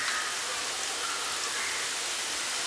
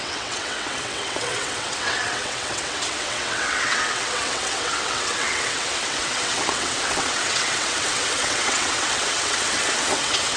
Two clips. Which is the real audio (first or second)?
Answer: first